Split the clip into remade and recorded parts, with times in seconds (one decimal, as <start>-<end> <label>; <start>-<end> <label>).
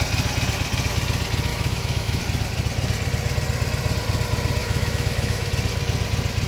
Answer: 0.0-1.5 recorded; 1.5-2.2 remade; 2.2-4.6 recorded; 4.6-5.5 remade; 5.5-6.5 recorded